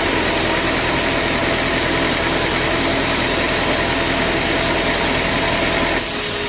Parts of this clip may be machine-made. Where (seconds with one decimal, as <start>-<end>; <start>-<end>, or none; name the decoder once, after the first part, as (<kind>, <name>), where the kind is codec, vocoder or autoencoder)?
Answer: none